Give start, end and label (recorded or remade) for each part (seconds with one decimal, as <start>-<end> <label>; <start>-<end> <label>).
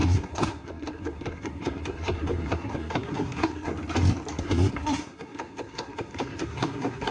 0.0-3.7 remade; 3.7-4.4 recorded; 4.4-7.1 remade